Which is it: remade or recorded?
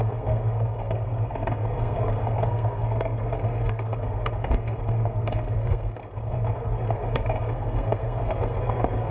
remade